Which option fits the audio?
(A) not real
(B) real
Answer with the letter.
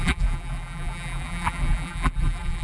A